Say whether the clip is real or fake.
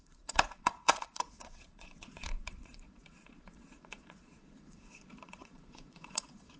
fake